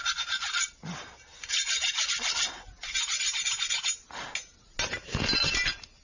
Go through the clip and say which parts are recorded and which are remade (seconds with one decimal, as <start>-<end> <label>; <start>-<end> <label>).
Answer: 0.0-6.0 recorded